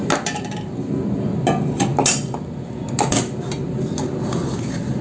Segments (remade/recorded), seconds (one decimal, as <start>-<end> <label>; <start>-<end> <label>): 0.0-5.0 recorded